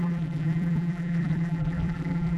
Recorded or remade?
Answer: remade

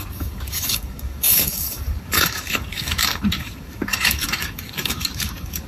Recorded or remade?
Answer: remade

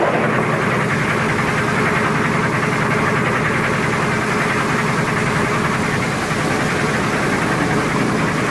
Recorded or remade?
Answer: recorded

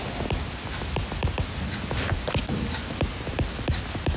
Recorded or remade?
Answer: recorded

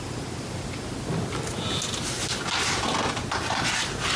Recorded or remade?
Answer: recorded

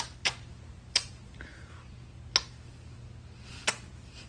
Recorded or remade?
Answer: recorded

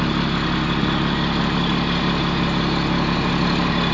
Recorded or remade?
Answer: recorded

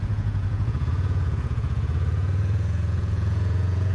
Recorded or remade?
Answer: remade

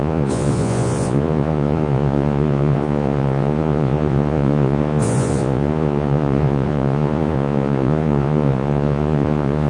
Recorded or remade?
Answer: remade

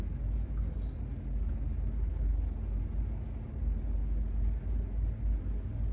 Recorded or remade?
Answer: recorded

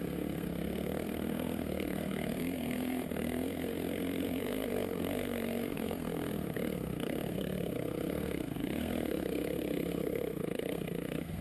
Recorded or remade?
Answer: remade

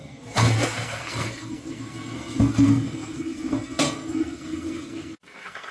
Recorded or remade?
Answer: remade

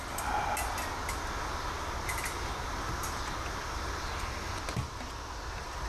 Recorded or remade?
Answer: recorded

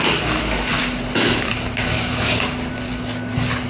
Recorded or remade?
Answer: recorded